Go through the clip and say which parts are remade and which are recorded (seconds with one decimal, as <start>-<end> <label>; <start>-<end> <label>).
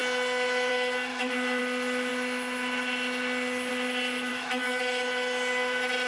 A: 0.0-1.1 recorded; 1.1-1.6 remade; 1.6-4.3 recorded; 4.3-4.8 remade; 4.8-6.1 recorded